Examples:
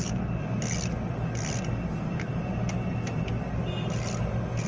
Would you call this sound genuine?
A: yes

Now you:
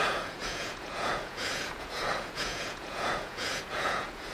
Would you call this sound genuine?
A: no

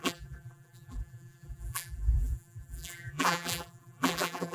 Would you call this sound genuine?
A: no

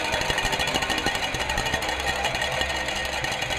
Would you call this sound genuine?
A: yes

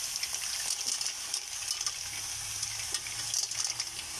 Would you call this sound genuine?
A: yes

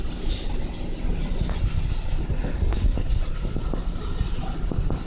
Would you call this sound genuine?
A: yes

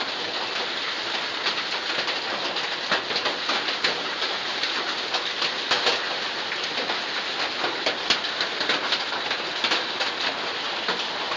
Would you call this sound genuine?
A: yes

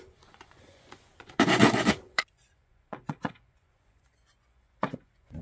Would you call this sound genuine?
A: no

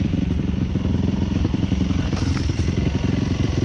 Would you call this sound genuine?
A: no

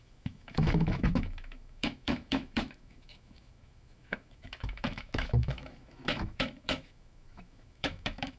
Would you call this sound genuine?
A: no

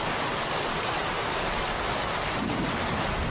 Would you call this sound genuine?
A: yes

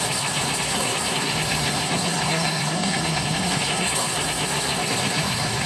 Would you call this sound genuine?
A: no